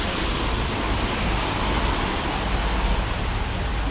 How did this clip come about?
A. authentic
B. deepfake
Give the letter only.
A